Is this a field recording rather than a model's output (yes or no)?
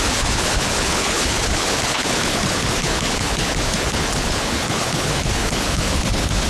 no